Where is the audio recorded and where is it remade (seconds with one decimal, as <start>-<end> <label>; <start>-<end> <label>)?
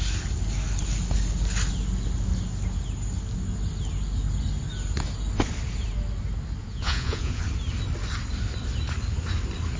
0.0-6.6 recorded; 6.6-7.4 remade; 7.4-9.8 recorded